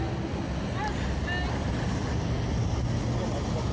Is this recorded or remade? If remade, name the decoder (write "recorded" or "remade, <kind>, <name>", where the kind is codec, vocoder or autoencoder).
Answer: recorded